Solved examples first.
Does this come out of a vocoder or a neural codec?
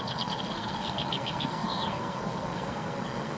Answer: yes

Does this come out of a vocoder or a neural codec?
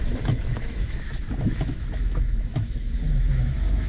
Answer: yes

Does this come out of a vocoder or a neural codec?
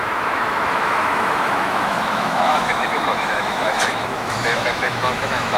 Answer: yes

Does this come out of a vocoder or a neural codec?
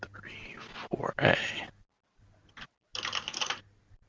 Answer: no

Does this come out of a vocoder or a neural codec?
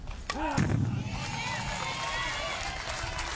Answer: no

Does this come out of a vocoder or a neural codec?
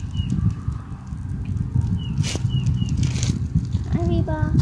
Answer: no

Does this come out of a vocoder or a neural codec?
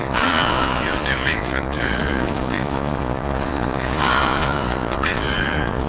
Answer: yes